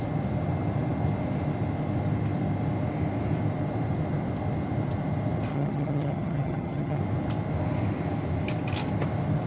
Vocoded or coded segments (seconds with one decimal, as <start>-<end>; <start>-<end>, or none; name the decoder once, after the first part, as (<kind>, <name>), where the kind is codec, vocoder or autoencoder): 5.5-7.0 (vocoder, HiFi-GAN)